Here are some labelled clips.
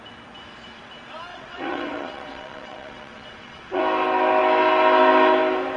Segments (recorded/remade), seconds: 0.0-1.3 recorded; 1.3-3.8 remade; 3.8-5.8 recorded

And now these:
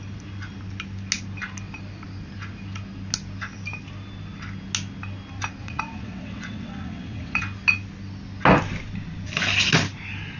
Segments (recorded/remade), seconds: 0.0-5.6 recorded; 5.6-7.4 remade; 7.4-10.4 recorded